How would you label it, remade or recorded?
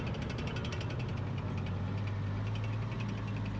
recorded